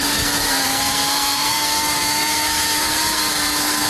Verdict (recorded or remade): remade